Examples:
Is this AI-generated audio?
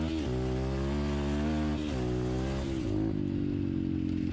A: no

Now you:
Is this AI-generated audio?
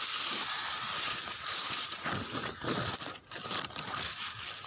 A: no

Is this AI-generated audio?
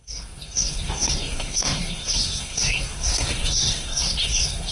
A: yes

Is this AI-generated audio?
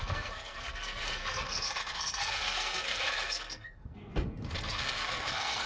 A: yes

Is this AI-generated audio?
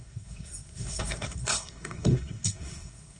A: yes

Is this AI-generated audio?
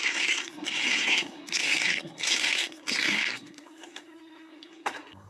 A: yes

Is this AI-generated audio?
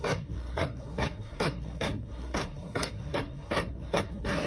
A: yes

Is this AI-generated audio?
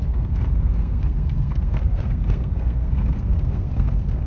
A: yes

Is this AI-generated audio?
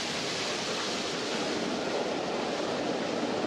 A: no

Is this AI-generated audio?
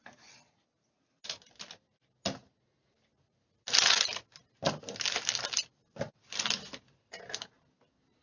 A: no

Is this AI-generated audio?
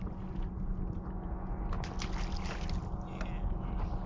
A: no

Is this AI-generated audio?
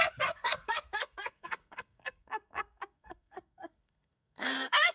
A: yes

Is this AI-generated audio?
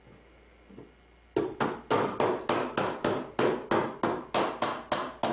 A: no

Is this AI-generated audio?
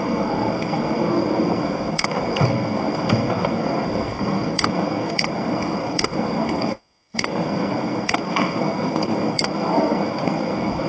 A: yes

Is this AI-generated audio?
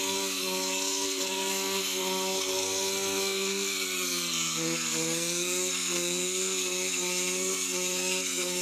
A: yes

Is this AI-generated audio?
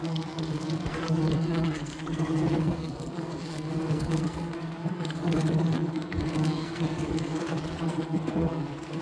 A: yes